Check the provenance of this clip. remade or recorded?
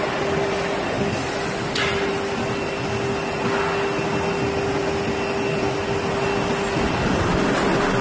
recorded